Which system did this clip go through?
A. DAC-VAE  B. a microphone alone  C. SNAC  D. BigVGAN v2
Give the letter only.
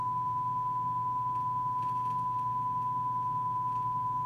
B